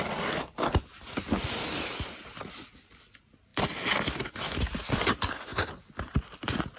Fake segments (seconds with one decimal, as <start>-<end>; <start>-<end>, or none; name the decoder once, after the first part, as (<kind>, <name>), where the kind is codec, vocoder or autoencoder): none